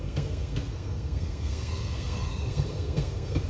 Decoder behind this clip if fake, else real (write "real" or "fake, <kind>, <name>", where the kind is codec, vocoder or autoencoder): fake, codec, SNAC